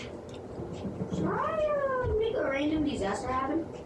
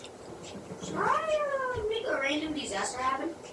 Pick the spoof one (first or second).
second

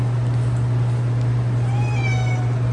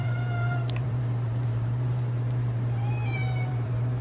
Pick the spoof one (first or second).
second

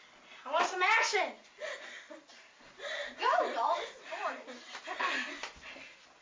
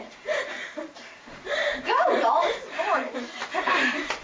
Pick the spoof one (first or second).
second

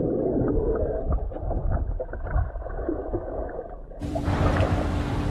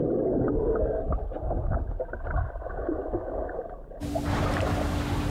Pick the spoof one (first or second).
first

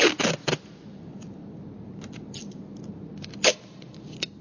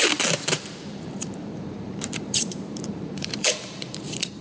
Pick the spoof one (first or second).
second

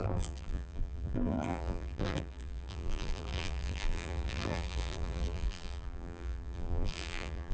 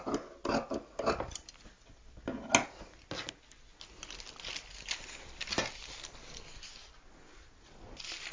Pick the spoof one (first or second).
first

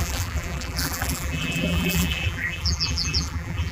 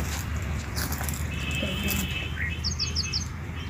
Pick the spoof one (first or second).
first